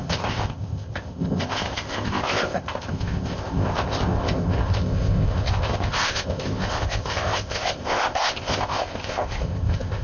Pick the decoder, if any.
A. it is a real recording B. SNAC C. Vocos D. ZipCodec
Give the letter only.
D